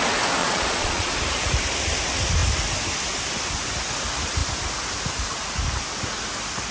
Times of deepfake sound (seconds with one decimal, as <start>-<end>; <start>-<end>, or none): 0.4-1.1